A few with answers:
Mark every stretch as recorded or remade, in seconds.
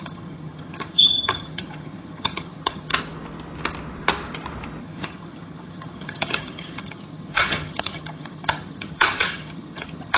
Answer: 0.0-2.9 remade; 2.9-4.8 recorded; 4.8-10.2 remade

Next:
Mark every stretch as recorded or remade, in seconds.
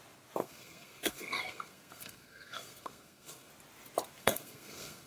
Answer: 0.0-0.4 recorded; 0.4-3.5 remade; 3.5-4.2 recorded; 4.2-5.1 remade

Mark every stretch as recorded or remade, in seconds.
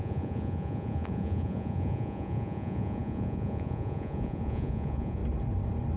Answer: 0.0-5.2 remade; 5.2-6.0 recorded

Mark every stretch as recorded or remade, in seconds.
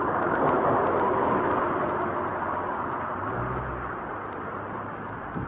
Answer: 0.0-5.5 recorded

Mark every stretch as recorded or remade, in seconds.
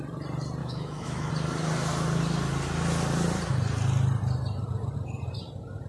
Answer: 0.0-0.6 recorded; 0.6-1.3 remade; 1.3-5.9 recorded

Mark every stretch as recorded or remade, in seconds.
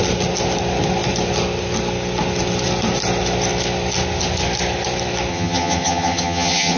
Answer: 0.0-5.3 recorded; 5.3-6.8 remade